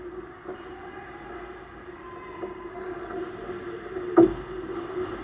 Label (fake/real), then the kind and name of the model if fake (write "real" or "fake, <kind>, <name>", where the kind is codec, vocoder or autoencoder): real